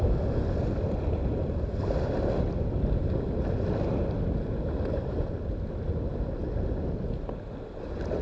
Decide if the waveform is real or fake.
real